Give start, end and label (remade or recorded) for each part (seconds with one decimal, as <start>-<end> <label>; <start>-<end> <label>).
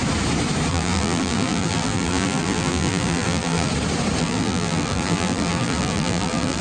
0.0-0.7 recorded; 0.7-3.7 remade; 3.7-4.2 recorded; 4.2-6.6 remade